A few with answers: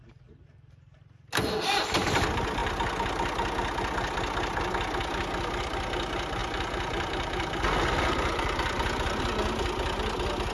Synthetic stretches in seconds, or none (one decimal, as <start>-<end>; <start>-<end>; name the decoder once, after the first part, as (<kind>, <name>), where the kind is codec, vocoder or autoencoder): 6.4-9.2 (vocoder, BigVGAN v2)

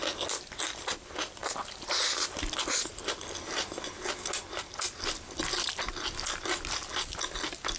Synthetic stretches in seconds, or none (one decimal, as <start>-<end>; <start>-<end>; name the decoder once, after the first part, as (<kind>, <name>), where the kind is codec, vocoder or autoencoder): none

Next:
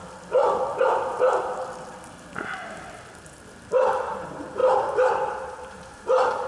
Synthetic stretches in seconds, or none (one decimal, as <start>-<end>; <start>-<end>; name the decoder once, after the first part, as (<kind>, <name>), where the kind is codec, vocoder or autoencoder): 3.9-6.5 (vocoder, BigVGAN v2)

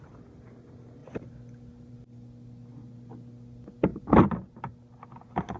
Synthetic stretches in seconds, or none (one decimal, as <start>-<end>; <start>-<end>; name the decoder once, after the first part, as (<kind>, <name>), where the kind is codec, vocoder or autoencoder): 3.9-4.6 (vocoder, BigVGAN v2)

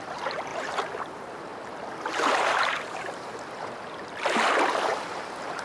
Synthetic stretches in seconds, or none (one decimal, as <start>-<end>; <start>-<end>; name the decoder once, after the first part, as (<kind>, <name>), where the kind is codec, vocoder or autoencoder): 0.0-1.5 (vocoder, BigVGAN v2); 2.1-3.3; 5.1-5.6

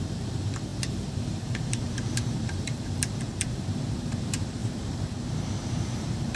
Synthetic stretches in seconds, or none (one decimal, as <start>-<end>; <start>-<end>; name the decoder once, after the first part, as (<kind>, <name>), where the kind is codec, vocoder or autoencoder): 0.0-6.4 (vocoder, BigVGAN v2)